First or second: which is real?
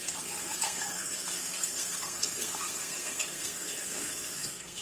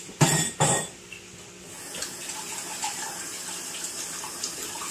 second